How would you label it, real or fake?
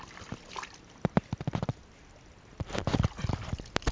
real